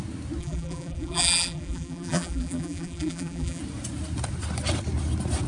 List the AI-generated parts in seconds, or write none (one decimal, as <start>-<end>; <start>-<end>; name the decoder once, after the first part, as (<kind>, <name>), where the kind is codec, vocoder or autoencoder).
0.4-3.6 (vocoder, BigVGAN v2)